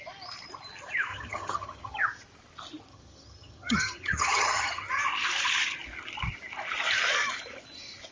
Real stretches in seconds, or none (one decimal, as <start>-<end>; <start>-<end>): 0.0-1.1; 2.0-2.9; 5.0-8.1